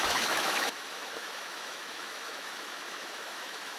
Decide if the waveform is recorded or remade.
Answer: remade